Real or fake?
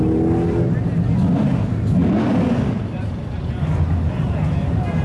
real